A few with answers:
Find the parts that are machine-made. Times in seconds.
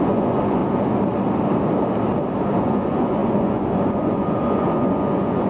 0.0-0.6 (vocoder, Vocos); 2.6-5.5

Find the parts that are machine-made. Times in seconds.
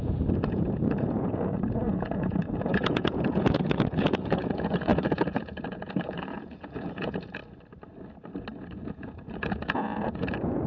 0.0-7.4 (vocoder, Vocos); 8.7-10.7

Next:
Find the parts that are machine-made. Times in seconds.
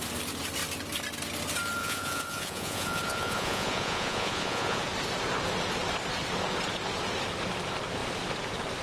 1.8-4.8 (vocoder, Vocos)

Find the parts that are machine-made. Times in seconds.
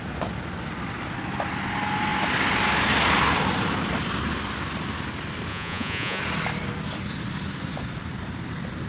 5.5-6.2 (vocoder, Vocos)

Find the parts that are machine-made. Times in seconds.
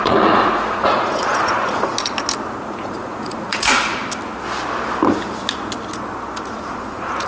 0.0-1.9 (vocoder, Vocos); 2.6-4.0; 6.5-7.3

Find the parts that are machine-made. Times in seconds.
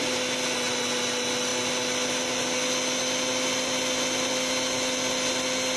none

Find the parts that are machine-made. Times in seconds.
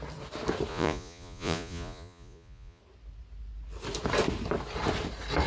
0.7-2.8 (vocoder, Vocos)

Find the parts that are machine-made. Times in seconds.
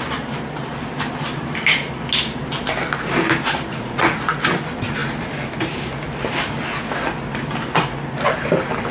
3.7-4.4 (vocoder, Vocos)